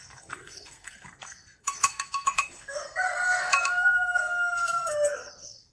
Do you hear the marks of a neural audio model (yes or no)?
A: yes